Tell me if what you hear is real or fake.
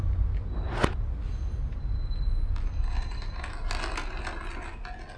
real